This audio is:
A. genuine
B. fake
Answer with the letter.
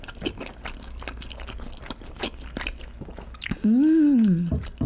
A